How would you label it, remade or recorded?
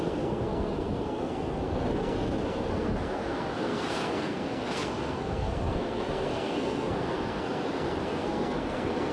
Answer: remade